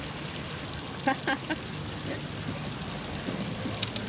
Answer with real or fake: real